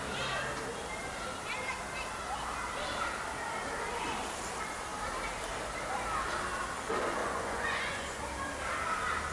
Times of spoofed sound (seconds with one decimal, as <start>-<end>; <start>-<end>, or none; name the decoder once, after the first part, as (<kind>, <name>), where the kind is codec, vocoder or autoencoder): 7.2-8.2 (vocoder, Vocos)